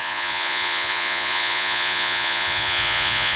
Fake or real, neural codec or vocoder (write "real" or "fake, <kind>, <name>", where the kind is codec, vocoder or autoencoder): fake, vocoder, Vocos